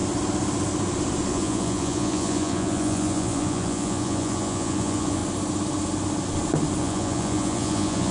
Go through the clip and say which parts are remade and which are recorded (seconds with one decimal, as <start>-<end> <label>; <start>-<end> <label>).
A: 0.0-1.3 recorded; 1.3-5.2 remade; 5.2-6.8 recorded; 6.8-8.1 remade